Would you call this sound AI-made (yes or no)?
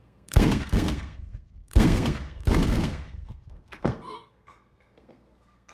yes